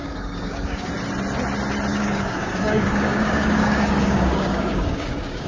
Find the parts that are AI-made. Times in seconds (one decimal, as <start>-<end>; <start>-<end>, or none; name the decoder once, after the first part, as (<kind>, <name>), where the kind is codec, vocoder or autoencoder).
0.0-0.9 (codec, DAC); 1.9-5.5